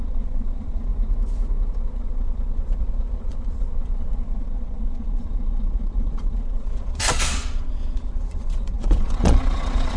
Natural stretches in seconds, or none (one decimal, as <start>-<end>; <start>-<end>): 0.9-1.7